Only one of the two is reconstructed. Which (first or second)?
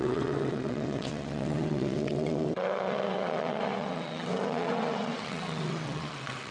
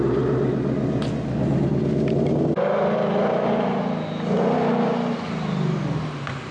first